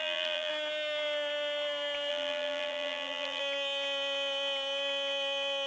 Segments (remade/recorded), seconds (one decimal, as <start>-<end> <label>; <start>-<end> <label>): 0.0-0.5 remade; 0.5-2.1 recorded; 2.1-3.4 remade; 3.4-5.7 recorded